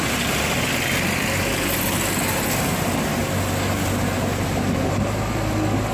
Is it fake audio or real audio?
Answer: real